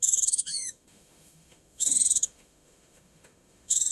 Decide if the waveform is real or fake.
fake